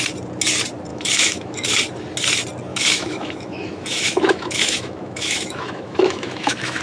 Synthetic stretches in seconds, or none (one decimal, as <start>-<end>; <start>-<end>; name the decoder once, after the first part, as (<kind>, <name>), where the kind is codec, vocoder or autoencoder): 0.9-1.8 (autoencoder, DAC-VAE); 2.7-6.8